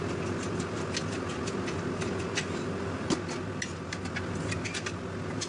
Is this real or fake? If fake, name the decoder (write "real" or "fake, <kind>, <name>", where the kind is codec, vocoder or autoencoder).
real